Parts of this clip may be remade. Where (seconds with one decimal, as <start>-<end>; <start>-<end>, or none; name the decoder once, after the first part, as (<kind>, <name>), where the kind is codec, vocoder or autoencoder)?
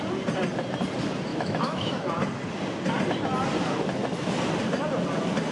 1.3-2.1 (autoencoder, DAC-VAE)